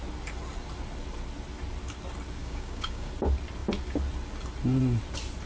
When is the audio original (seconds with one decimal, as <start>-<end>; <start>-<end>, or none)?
0.0-2.4; 3.1-5.5